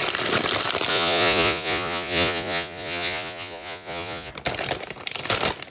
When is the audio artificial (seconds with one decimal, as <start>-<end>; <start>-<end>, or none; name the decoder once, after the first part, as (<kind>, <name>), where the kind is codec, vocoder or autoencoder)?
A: 0.9-4.3 (vocoder, Vocos)